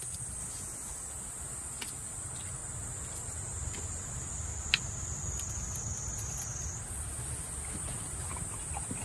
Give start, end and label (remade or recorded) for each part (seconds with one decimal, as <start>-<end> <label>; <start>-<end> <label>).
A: 0.0-2.6 recorded; 2.6-7.2 remade; 7.2-9.0 recorded